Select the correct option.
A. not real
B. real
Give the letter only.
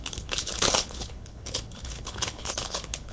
A